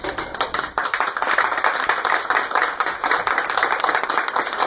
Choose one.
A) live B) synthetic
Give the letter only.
B